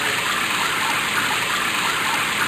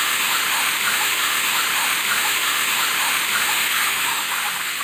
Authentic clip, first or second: first